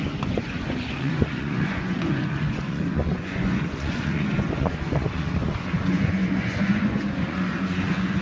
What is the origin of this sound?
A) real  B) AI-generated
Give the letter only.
B